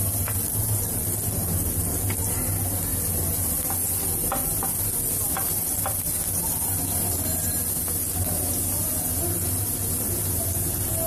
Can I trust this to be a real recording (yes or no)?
yes